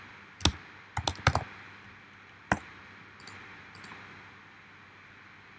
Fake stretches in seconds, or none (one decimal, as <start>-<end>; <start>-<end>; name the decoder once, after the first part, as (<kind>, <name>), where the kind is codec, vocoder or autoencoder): none